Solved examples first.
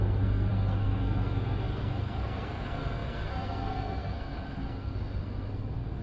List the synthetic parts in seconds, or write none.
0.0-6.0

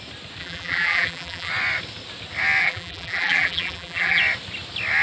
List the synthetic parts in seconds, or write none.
0.4-1.5; 2.6-4.2

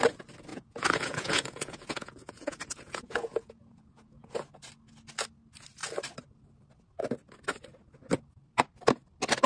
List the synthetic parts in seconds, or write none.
0.5-4.3

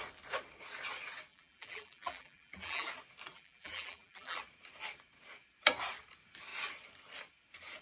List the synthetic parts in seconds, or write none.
1.3-2.9; 3.3-4.4